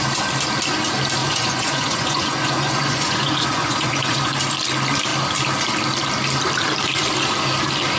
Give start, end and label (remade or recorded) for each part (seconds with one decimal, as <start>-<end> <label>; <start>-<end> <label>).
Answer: 0.0-1.2 recorded; 1.2-4.3 remade; 4.3-8.0 recorded